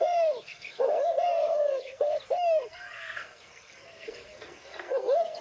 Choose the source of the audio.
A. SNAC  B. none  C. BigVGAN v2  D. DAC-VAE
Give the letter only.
A